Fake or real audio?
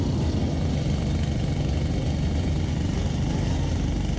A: real